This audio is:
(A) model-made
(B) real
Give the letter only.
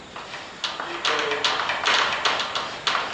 B